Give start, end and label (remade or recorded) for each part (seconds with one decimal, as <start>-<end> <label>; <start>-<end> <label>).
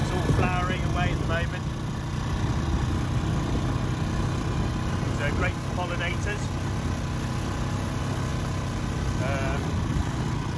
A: 0.0-10.6 recorded